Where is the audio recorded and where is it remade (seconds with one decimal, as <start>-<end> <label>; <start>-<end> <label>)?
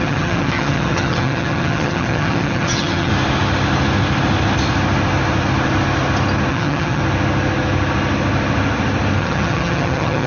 0.0-3.1 remade; 3.1-6.5 recorded; 6.5-7.0 remade; 7.0-9.2 recorded; 9.2-10.3 remade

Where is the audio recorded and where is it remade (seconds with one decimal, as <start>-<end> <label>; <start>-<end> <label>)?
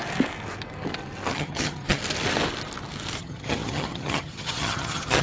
0.0-1.3 recorded; 1.3-2.0 remade; 2.0-3.2 recorded; 3.2-5.2 remade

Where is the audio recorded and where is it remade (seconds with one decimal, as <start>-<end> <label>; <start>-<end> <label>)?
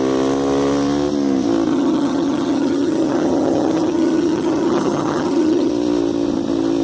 0.0-1.7 recorded; 1.7-5.7 remade; 5.7-6.8 recorded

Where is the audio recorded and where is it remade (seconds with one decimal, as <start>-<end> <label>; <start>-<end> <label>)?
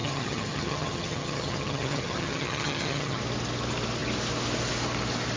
0.0-3.2 remade; 3.2-5.4 recorded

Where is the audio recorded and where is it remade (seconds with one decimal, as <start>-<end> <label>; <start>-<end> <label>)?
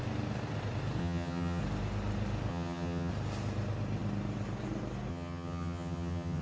0.0-1.0 recorded; 1.0-1.6 remade; 1.6-2.5 recorded; 2.5-3.1 remade; 3.1-5.1 recorded; 5.1-6.4 remade